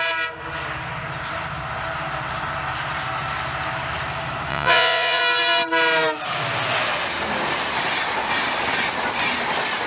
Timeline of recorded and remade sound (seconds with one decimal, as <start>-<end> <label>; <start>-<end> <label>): 0.0-4.5 recorded; 4.5-5.2 remade; 5.2-9.9 recorded